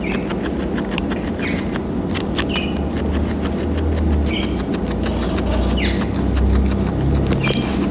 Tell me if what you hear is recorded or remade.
recorded